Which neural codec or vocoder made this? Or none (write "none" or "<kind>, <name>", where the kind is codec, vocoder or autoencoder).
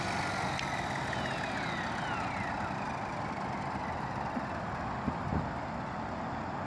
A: none